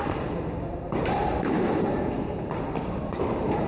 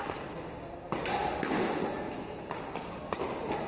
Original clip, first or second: second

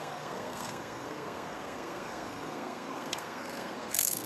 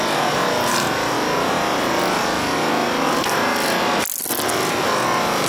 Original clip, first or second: second